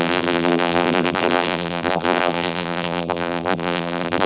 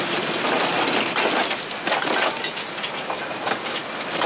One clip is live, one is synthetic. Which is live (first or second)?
second